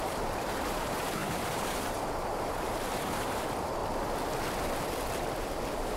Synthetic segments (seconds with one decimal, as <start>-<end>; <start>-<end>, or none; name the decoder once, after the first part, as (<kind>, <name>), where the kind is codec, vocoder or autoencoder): 0.0-3.8 (vocoder, BigVGAN v2); 5.6-6.0

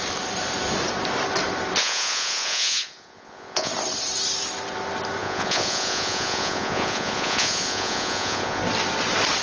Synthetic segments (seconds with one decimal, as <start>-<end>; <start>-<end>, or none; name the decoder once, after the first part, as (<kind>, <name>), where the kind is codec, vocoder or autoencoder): 1.8-3.7 (vocoder, Vocos); 5.2-8.6

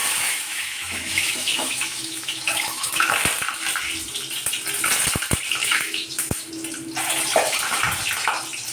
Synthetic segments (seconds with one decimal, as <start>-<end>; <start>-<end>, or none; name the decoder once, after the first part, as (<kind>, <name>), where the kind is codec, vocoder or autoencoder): 0.0-3.2 (autoencoder, DAC-VAE); 5.6-6.5

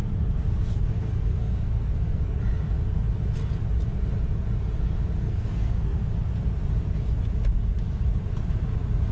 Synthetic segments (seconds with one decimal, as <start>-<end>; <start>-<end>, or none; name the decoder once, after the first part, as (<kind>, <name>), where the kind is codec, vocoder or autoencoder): 0.7-2.4 (codec, SNAC); 5.2-6.0